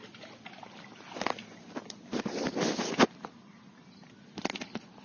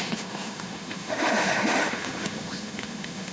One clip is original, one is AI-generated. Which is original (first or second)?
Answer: first